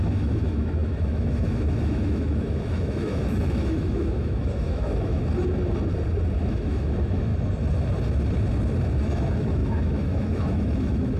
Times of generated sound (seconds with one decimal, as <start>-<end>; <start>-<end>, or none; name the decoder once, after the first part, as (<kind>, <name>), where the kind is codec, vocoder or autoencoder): 0.0-5.2 (autoencoder, DAC-VAE); 6.4-7.3; 9.0-11.2